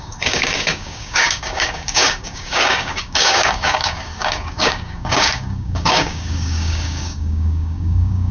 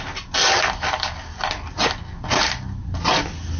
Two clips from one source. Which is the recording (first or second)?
second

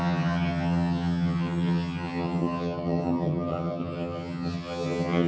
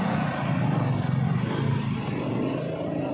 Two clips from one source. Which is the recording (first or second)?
second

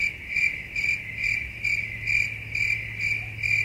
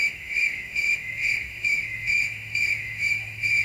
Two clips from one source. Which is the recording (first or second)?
first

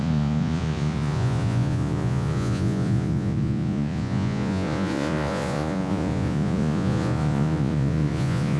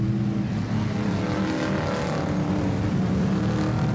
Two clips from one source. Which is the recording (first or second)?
second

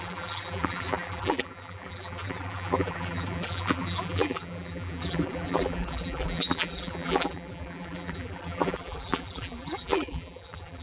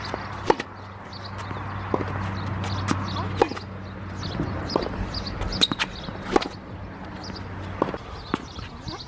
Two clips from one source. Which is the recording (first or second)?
second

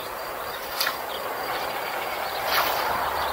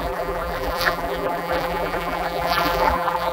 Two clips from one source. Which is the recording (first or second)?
first